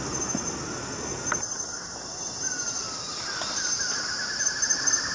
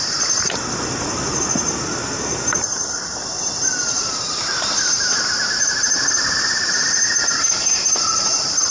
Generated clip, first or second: second